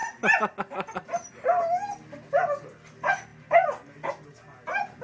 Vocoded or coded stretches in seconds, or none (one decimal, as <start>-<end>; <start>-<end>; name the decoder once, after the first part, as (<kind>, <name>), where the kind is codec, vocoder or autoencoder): none